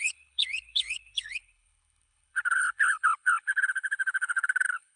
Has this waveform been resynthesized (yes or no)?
yes